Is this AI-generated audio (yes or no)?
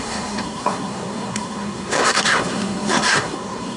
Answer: yes